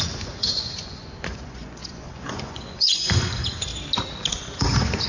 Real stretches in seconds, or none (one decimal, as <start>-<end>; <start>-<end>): 3.7-4.3